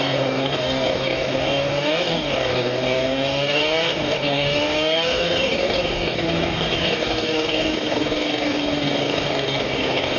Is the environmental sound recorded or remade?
remade